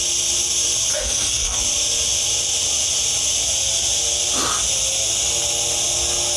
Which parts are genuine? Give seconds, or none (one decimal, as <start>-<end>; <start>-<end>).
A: 0.0-0.9; 1.6-6.4